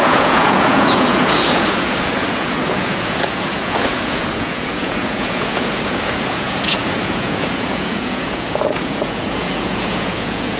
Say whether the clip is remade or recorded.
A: remade